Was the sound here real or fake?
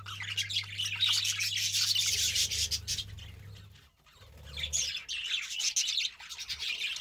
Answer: real